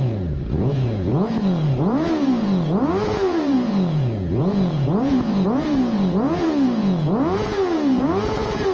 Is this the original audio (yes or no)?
no